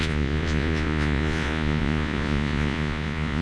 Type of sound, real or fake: fake